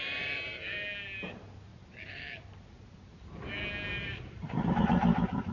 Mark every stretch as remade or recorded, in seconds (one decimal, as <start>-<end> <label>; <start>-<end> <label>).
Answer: 0.0-1.7 recorded; 1.7-3.3 remade; 3.3-3.9 recorded; 3.9-4.8 remade; 4.8-5.5 recorded